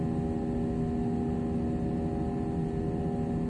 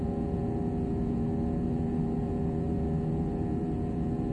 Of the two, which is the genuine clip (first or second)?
first